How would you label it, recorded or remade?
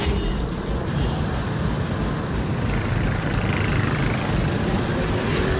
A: remade